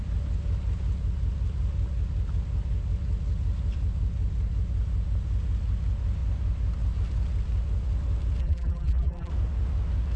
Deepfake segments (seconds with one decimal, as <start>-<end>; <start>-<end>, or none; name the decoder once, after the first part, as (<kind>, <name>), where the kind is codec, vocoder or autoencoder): 8.4-9.3 (vocoder, BigVGAN v2)